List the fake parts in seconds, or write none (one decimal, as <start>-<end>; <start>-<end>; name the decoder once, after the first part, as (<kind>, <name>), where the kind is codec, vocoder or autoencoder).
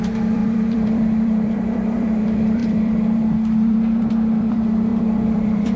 0.0-5.8 (vocoder, BigVGAN v2)